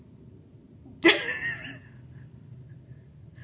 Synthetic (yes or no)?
no